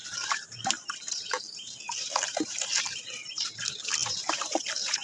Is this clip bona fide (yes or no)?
no